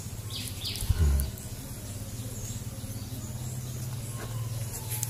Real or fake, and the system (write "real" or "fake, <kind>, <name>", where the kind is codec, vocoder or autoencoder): real